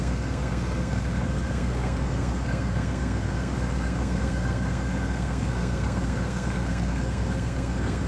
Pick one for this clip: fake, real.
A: fake